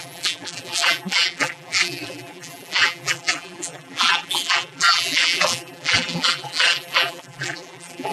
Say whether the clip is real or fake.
fake